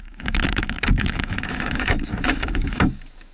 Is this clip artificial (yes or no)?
yes